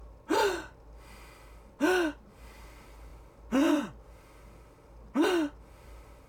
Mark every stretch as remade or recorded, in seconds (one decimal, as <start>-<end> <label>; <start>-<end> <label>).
0.0-6.3 recorded